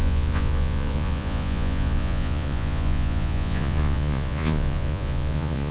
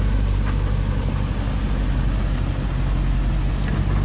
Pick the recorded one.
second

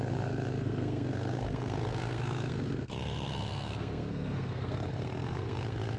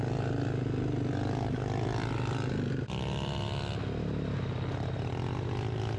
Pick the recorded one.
second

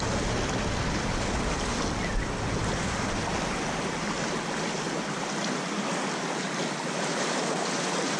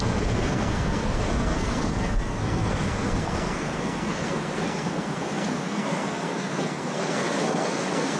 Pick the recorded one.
first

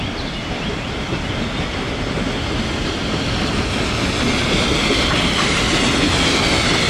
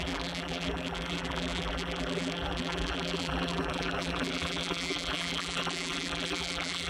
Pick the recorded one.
first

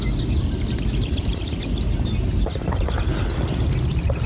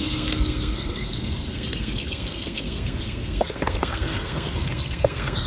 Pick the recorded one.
first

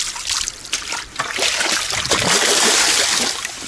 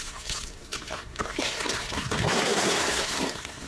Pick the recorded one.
first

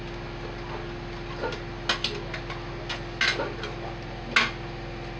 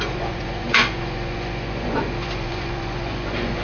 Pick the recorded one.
first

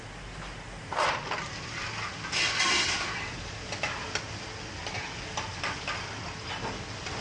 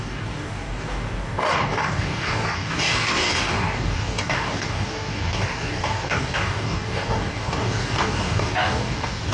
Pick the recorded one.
first